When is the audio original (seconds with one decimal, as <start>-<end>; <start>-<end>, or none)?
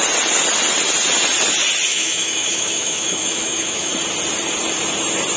0.0-1.9; 3.9-5.4